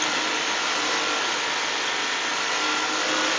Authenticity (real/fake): real